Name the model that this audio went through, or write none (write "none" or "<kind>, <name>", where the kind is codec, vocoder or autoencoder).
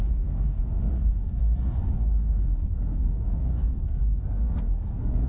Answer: codec, SNAC